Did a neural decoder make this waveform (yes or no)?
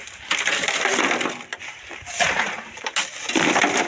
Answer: no